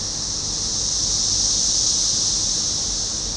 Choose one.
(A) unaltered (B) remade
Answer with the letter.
A